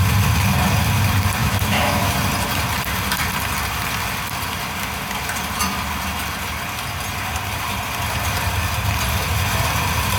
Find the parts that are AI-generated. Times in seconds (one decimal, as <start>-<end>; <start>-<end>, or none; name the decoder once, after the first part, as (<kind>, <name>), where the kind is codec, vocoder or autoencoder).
1.4-2.1 (autoencoder, DAC-VAE)